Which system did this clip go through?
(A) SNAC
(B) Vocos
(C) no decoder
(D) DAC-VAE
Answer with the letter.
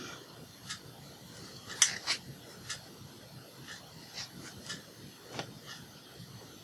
C